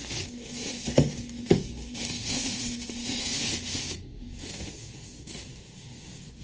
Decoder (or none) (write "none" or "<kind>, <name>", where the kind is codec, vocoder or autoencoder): autoencoder, DAC-VAE